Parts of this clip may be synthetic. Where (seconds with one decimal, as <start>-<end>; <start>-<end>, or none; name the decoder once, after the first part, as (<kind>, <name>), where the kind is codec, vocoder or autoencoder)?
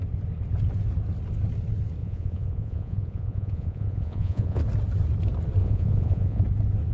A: 2.0-4.6 (vocoder, Vocos); 5.6-6.4